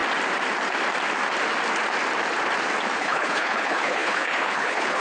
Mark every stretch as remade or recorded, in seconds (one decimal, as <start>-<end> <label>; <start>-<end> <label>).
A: 0.0-3.0 recorded; 3.0-5.0 remade